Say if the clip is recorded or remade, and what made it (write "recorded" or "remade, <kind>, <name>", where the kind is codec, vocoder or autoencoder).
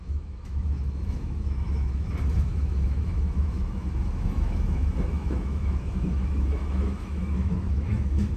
remade, autoencoder, DAC-VAE